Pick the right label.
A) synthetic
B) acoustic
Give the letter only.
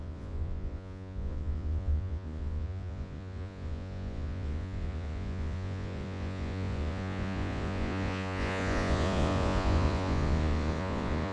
A